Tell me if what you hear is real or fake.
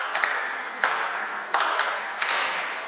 fake